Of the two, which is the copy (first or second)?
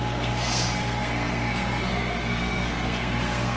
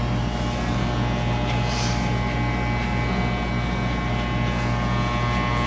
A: first